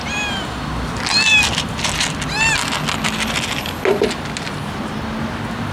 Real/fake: real